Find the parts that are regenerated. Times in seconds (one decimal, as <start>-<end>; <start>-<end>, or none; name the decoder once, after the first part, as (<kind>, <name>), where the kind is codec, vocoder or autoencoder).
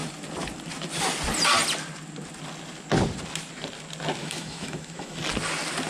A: 4.2-5.2 (autoencoder, DAC-VAE)